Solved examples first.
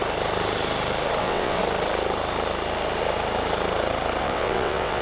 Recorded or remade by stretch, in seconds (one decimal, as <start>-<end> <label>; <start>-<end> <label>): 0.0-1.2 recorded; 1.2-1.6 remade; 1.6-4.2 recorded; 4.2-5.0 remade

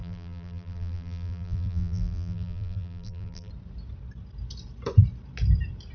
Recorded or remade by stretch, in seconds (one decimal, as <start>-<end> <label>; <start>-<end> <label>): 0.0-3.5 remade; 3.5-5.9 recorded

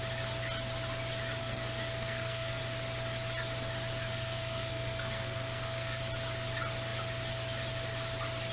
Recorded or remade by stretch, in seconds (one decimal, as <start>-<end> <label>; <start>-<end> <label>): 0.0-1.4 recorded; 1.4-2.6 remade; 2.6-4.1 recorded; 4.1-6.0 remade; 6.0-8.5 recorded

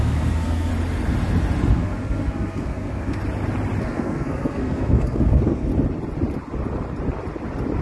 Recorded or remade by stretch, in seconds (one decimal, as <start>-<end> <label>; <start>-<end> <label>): 0.0-0.7 remade; 0.7-1.7 recorded; 1.7-3.2 remade; 3.2-3.8 recorded; 3.8-5.7 remade; 5.7-7.8 recorded

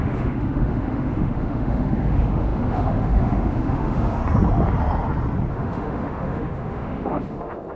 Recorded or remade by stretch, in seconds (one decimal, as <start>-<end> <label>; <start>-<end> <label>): 0.0-4.2 remade; 4.2-5.5 recorded; 5.5-7.8 remade